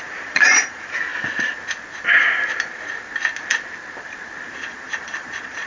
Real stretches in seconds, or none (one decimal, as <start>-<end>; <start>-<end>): 1.1-4.5